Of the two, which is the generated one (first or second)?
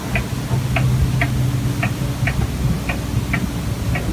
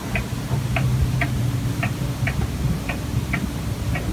second